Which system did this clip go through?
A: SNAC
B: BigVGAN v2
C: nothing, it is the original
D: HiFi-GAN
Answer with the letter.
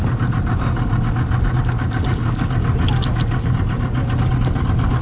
C